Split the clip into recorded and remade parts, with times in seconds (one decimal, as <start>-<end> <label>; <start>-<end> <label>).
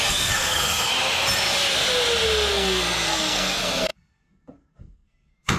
0.0-0.9 remade; 0.9-2.5 recorded; 2.5-5.6 remade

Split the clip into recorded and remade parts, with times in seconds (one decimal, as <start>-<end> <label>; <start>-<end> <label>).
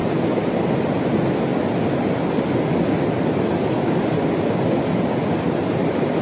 0.0-6.2 recorded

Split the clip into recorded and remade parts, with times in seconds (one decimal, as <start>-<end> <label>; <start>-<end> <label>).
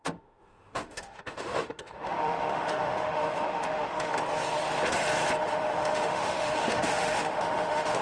0.0-4.1 remade; 4.1-5.4 recorded; 5.4-8.0 remade